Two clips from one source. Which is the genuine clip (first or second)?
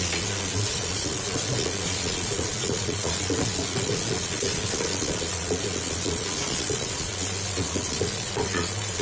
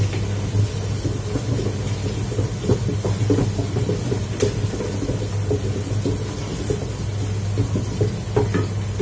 second